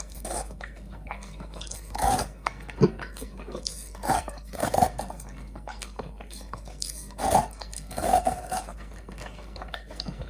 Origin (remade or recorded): remade